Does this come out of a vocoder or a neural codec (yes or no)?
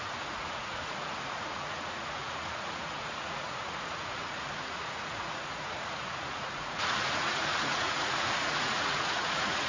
yes